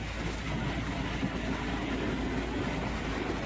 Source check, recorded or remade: recorded